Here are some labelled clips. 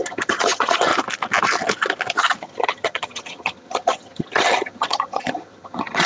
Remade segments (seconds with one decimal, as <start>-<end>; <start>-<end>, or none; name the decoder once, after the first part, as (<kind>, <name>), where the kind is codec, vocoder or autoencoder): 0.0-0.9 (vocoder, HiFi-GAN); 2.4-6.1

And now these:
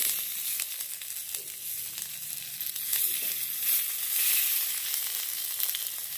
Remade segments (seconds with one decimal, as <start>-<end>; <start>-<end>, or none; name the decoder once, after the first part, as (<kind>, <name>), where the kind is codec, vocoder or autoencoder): none

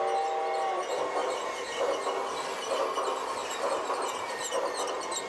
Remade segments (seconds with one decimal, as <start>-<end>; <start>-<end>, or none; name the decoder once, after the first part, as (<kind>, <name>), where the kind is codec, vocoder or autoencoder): 1.2-1.7 (vocoder, BigVGAN v2); 3.4-4.7

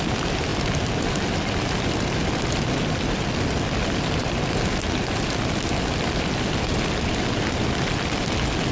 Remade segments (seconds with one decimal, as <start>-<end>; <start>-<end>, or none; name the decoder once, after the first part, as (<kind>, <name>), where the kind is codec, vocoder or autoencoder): none

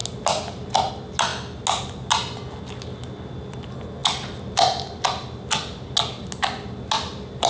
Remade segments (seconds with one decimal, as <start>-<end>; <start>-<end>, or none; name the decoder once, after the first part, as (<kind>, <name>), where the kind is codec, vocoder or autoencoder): none

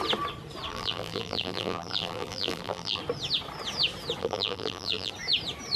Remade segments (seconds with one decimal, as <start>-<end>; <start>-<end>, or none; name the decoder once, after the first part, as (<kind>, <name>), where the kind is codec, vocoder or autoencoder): 0.7-3.0 (vocoder, BigVGAN v2); 4.2-5.1

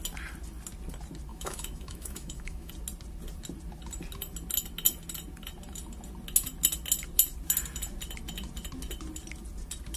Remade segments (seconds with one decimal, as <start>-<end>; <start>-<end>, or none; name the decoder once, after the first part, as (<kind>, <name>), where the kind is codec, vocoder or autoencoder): 1.3-2.7 (autoencoder, DAC-VAE)